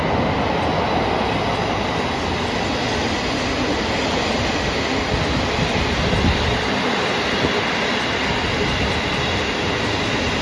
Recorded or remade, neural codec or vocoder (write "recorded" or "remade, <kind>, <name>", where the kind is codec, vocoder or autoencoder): recorded